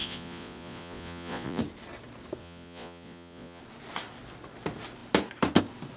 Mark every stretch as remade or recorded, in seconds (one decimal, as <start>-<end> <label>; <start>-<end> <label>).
0.0-1.6 remade; 1.6-2.4 recorded; 2.4-3.6 remade; 3.6-6.0 recorded